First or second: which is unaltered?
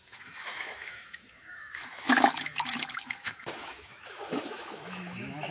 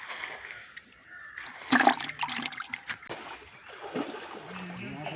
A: second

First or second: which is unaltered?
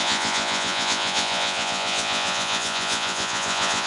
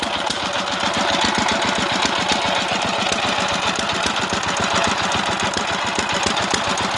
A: second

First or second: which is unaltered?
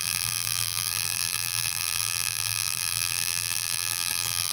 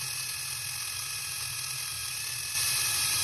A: second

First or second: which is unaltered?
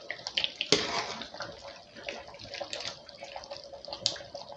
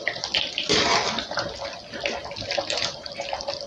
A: first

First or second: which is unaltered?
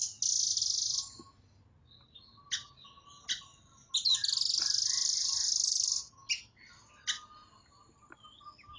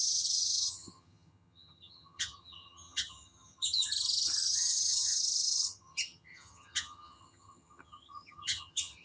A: first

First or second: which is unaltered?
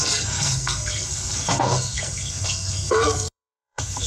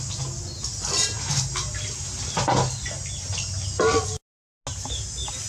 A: second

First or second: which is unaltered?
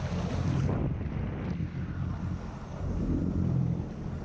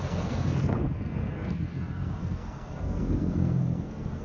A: first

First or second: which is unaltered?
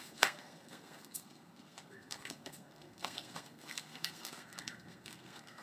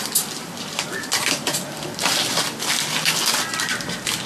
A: second